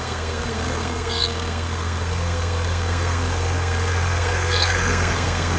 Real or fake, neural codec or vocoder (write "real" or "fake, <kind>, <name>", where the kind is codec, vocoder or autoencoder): fake, codec, SNAC